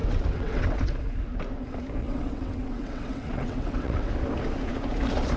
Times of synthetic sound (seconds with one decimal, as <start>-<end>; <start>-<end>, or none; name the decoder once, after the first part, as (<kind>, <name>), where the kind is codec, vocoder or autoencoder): 0.0-0.8 (vocoder, WaveNeXt); 2.0-4.1